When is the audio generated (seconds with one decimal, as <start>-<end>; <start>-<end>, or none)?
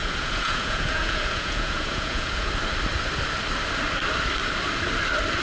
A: 0.0-2.5